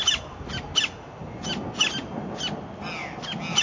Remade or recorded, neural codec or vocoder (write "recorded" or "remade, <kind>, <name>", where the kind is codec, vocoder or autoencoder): recorded